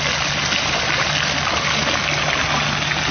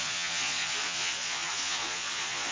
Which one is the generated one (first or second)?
second